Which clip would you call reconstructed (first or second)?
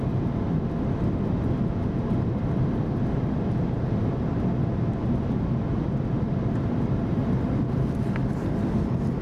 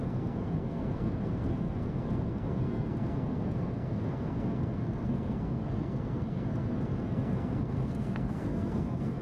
second